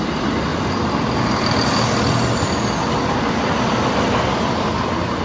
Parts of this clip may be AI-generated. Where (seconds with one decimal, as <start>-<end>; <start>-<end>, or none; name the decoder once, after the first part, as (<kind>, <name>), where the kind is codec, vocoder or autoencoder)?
none